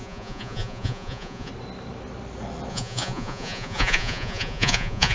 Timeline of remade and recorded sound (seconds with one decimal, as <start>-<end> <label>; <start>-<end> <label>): 0.0-1.5 remade; 1.5-2.7 recorded; 2.7-5.1 remade